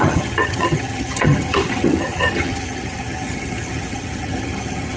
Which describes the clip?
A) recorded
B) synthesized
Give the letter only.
B